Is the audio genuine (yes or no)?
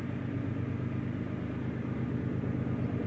yes